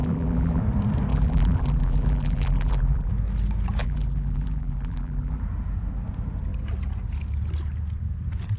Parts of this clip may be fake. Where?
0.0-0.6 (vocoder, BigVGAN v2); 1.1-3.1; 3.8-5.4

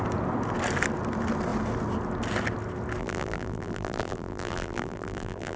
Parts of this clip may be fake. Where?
3.0-5.6 (vocoder, BigVGAN v2)

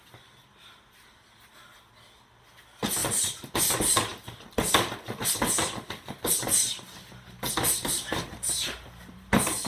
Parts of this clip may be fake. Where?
7.8-9.7 (vocoder, BigVGAN v2)

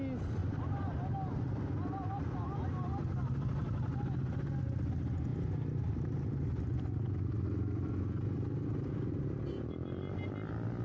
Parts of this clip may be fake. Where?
0.4-1.3 (vocoder, BigVGAN v2)

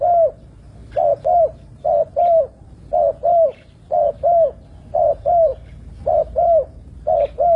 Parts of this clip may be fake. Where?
0.0-0.8 (vocoder, BigVGAN v2); 1.4-5.5; 6.2-7.6

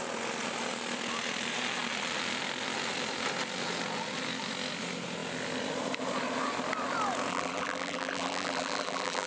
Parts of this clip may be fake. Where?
7.3-9.3 (vocoder, BigVGAN v2)